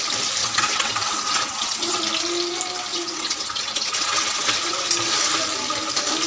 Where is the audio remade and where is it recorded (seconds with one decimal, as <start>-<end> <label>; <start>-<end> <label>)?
0.0-0.4 recorded; 0.4-2.0 remade; 2.0-2.9 recorded; 2.9-4.9 remade; 4.9-6.3 recorded